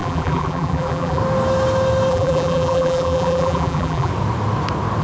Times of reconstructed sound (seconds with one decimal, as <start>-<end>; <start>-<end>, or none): 0.0-1.2; 2.1-4.1